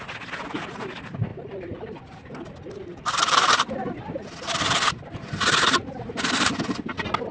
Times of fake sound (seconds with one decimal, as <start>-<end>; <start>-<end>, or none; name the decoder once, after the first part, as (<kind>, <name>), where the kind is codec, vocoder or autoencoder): 1.3-2.3 (vocoder, BigVGAN v2); 2.9-6.8